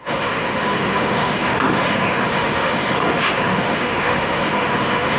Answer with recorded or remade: remade